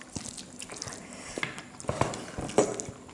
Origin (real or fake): real